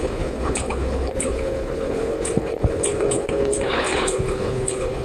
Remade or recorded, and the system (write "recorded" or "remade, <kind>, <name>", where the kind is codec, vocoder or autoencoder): remade, codec, HILCodec